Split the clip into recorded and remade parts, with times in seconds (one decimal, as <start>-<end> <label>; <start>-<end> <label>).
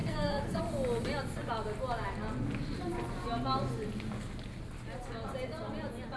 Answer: 0.0-0.6 remade; 0.6-6.2 recorded